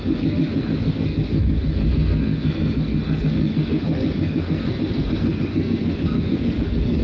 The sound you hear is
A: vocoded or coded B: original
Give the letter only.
A